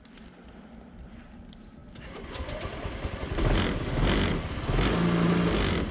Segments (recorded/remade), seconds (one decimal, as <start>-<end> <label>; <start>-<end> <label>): 0.0-5.9 recorded